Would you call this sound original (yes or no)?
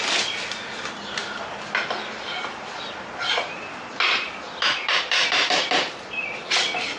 yes